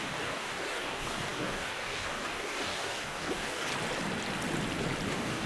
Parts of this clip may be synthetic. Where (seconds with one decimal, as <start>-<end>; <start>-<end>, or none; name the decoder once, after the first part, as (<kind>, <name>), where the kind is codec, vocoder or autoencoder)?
0.0-3.7 (codec, DAC); 5.1-5.5